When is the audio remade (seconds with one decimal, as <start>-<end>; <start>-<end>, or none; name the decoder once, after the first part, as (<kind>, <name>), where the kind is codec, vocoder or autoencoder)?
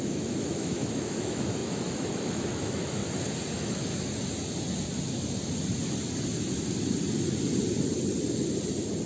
0.0-3.0 (autoencoder, DAC-VAE); 3.5-3.9